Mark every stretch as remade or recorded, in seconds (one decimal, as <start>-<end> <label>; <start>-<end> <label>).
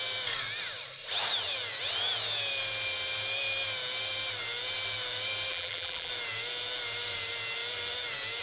0.0-5.5 recorded; 5.5-6.1 remade; 6.1-8.4 recorded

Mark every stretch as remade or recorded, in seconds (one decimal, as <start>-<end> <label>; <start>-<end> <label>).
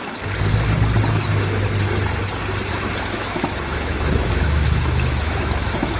0.0-2.7 recorded; 2.7-6.0 remade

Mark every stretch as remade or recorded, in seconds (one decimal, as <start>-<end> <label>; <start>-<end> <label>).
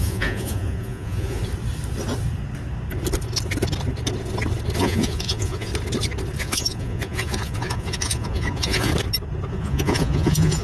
0.0-1.4 remade; 1.4-4.8 recorded; 4.8-5.7 remade; 5.7-6.4 recorded; 6.4-8.9 remade; 8.9-9.5 recorded; 9.5-10.6 remade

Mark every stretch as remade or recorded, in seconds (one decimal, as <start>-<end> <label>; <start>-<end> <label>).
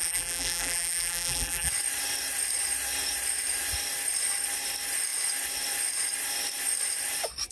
0.0-1.7 remade; 1.7-7.5 recorded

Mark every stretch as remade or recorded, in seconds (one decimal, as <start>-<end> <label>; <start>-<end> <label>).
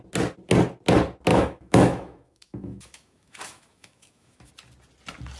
0.0-1.3 recorded; 1.3-4.5 remade; 4.5-5.4 recorded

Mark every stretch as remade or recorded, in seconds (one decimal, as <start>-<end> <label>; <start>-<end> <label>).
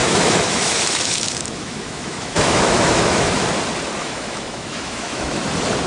0.0-3.5 remade; 3.5-4.0 recorded; 4.0-5.4 remade; 5.4-5.9 recorded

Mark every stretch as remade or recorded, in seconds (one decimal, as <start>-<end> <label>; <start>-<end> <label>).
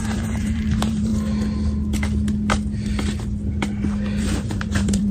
0.0-1.1 remade; 1.1-4.2 recorded; 4.2-5.1 remade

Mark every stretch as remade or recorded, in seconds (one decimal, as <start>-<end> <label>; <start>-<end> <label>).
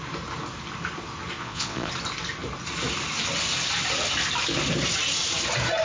0.0-1.4 recorded; 1.4-1.9 remade; 1.9-5.8 recorded